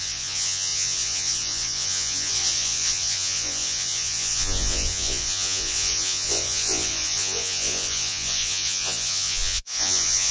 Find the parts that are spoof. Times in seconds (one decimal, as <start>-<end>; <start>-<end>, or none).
0.0-10.3